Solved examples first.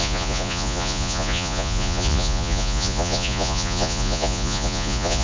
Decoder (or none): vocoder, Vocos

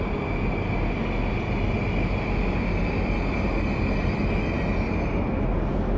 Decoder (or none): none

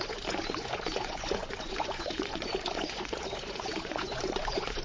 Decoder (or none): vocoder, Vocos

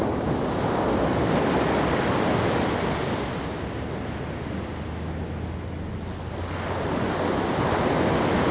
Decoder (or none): none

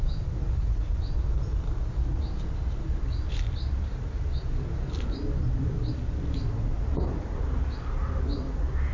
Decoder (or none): none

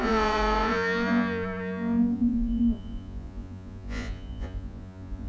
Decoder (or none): vocoder, Vocos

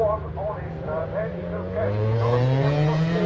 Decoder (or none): vocoder, Vocos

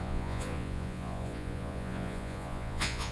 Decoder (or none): vocoder, Vocos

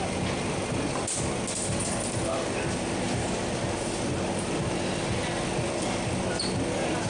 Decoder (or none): none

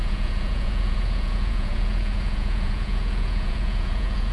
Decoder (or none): vocoder, Vocos